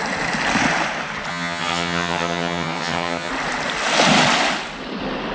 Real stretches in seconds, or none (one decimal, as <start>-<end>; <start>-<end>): 0.0-1.3; 3.3-5.3